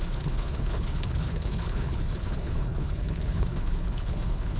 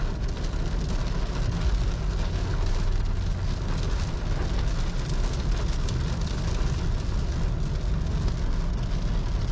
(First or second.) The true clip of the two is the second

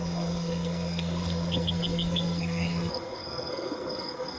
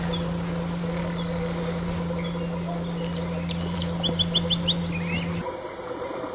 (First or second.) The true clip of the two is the second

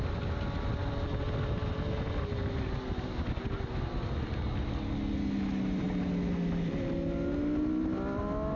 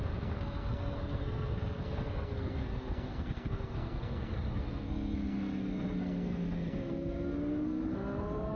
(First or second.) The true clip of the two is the first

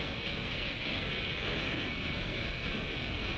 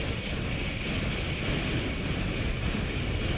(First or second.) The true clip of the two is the second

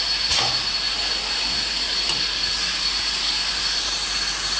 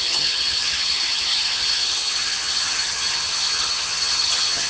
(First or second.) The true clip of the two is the first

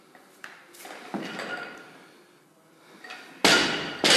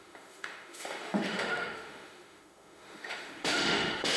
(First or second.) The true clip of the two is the first